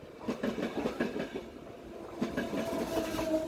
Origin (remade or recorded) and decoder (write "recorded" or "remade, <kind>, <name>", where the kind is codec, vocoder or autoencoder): recorded